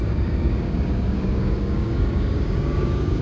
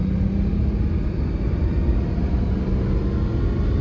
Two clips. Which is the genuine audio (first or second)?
second